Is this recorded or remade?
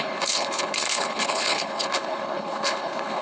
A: remade